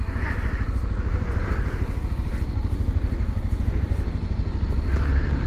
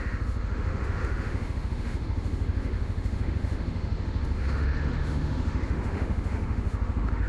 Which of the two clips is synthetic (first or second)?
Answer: second